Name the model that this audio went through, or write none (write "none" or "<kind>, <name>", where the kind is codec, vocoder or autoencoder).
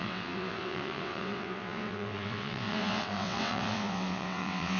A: vocoder, WaveNeXt